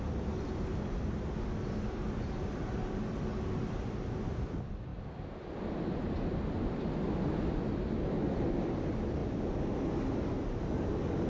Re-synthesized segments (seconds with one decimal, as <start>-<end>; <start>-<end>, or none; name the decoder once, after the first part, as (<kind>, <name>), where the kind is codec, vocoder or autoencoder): none